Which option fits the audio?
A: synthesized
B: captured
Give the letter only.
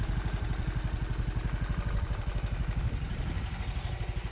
B